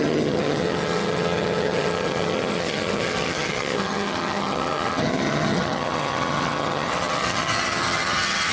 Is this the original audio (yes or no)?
no